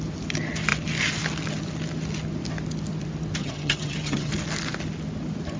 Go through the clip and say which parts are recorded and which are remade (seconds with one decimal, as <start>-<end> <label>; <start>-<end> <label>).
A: 0.0-3.4 recorded; 3.4-4.3 remade; 4.3-5.6 recorded

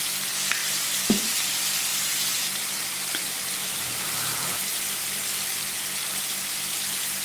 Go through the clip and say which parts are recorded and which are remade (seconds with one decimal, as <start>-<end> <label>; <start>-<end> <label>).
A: 0.0-0.6 recorded; 0.6-1.5 remade; 1.5-1.9 recorded; 1.9-4.5 remade; 4.5-7.2 recorded

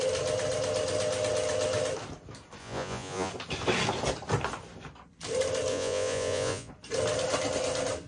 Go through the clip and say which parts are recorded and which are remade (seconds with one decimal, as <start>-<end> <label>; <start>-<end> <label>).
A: 0.0-2.6 recorded; 2.6-3.3 remade; 3.3-5.7 recorded; 5.7-6.7 remade; 6.7-8.1 recorded

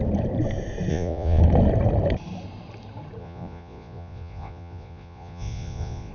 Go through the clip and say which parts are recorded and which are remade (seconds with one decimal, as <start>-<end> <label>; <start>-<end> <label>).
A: 0.0-0.9 recorded; 0.9-1.4 remade; 1.4-3.2 recorded; 3.2-6.1 remade

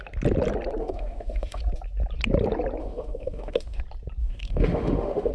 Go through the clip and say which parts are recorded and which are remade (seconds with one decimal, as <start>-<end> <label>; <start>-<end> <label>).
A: 0.0-0.8 recorded; 0.8-1.6 remade; 1.6-2.8 recorded; 2.8-3.8 remade; 3.8-4.2 recorded; 4.2-5.3 remade

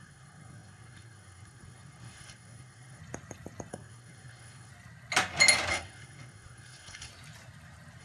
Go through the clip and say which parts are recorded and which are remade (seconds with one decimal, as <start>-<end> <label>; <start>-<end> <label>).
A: 0.0-3.0 remade; 3.0-3.7 recorded; 3.7-4.7 remade; 4.7-5.7 recorded; 5.7-7.1 remade; 7.1-8.0 recorded

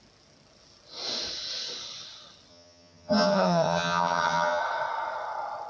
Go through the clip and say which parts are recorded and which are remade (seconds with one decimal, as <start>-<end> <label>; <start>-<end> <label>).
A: 0.0-2.5 recorded; 2.5-4.6 remade; 4.6-5.7 recorded

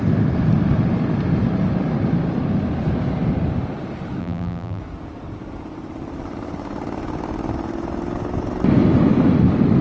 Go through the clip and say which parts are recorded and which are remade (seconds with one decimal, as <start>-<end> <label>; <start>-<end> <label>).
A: 0.0-4.2 recorded; 4.2-4.8 remade; 4.8-9.8 recorded